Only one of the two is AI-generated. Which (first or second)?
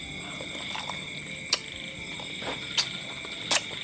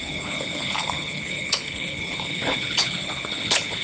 second